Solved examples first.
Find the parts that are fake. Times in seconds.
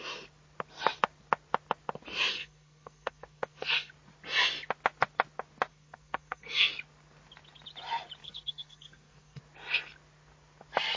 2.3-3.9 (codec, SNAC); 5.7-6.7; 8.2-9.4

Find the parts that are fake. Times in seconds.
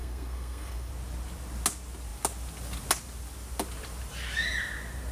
0.0-0.9 (codec, SNAC)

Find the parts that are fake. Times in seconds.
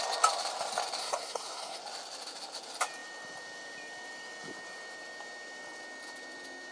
1.0-1.8 (codec, SNAC)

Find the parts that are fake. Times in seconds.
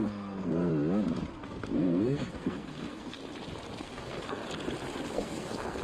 0.0-0.7 (codec, SNAC); 1.4-3.2; 3.8-4.4; 5.1-5.8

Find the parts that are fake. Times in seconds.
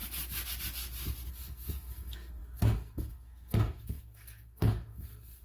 1.3-5.4 (codec, SNAC)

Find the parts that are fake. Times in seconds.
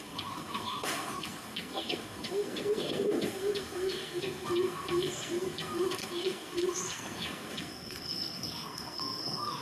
0.0-9.6 (codec, SNAC)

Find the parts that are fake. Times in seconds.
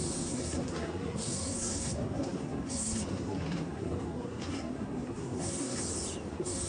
0.0-5.8 (codec, SNAC); 6.3-6.7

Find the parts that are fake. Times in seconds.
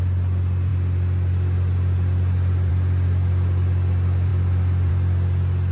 none